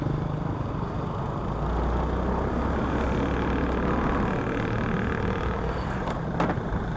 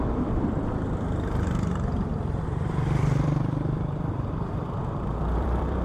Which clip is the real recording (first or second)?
first